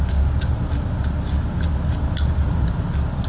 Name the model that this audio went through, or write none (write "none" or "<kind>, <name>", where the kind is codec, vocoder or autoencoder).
none